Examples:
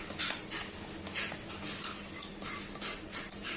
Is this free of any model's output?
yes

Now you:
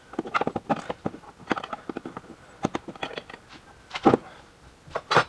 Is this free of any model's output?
yes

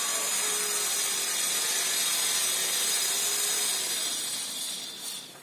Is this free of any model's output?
yes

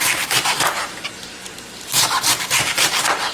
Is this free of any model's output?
no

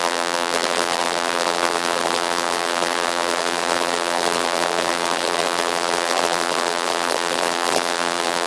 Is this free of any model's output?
no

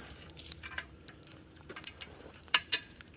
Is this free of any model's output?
no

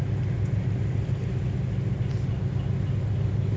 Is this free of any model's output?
yes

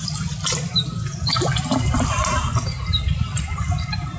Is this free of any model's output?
no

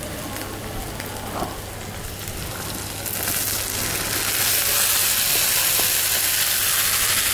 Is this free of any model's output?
yes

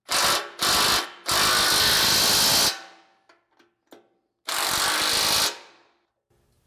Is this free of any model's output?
yes